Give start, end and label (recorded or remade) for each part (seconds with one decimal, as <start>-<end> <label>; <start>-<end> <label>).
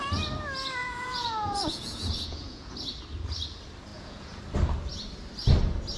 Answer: 0.0-0.8 recorded; 0.8-2.7 remade; 2.7-3.9 recorded; 3.9-4.4 remade; 4.4-6.0 recorded